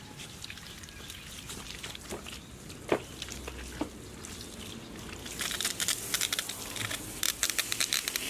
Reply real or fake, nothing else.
real